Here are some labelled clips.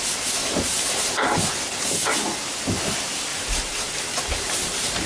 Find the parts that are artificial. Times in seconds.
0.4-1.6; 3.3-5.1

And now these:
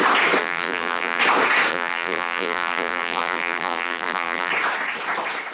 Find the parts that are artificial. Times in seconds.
0.4-1.2; 1.7-4.5